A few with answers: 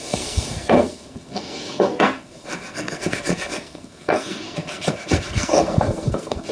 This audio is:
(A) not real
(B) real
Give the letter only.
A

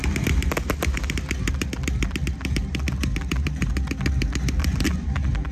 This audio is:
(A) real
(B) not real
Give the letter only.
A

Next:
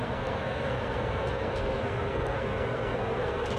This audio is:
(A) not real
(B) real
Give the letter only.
A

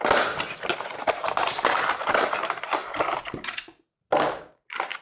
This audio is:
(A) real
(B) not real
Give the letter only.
A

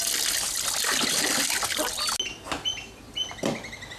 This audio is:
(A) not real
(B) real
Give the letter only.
B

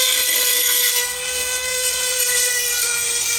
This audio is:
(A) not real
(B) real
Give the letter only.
A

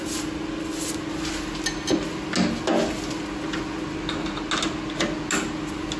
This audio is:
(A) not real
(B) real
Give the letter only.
B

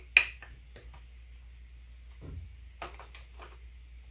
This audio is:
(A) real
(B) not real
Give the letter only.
A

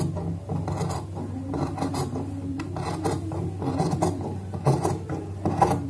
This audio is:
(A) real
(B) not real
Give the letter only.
A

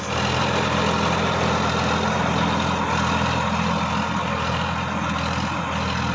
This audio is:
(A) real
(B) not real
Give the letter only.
A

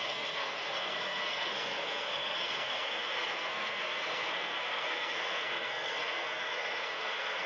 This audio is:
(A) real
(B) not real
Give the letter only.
B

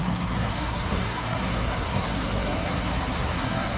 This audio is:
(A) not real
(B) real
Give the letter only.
A